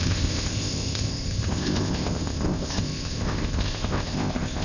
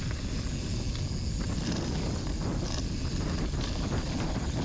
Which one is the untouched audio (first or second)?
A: second